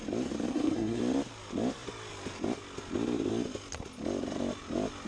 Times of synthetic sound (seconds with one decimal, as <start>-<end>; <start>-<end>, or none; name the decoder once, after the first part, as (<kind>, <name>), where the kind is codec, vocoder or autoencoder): 0.5-1.0 (codec, SNAC)